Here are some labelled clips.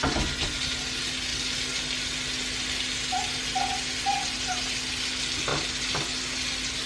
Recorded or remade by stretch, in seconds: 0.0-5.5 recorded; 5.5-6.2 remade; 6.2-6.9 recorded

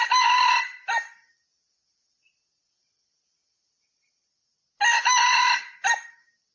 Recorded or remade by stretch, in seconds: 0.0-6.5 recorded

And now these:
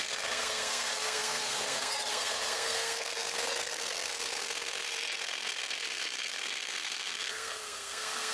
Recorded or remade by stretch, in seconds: 0.0-8.3 remade

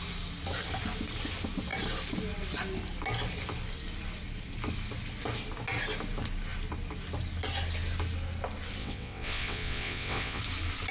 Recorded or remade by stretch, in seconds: 0.0-8.8 recorded; 8.8-10.4 remade; 10.4-10.9 recorded